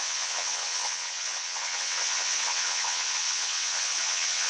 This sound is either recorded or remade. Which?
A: remade